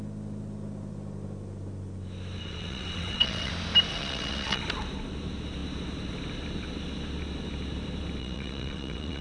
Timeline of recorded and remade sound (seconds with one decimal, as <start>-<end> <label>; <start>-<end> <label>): 0.0-2.4 recorded; 2.4-3.5 remade; 3.5-3.9 recorded; 3.9-4.6 remade; 4.6-8.2 recorded; 8.2-9.2 remade